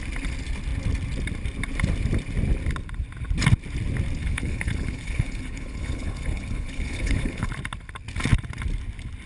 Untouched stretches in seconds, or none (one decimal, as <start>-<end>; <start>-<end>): 0.0-4.2; 7.5-9.3